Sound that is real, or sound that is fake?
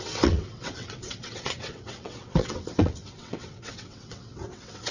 fake